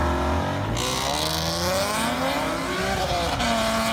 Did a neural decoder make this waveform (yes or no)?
no